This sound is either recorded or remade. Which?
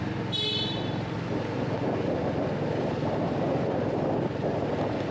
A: recorded